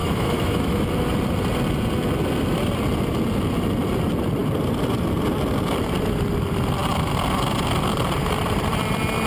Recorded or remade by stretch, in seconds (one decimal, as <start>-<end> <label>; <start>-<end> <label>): 0.0-0.8 remade; 0.8-9.3 recorded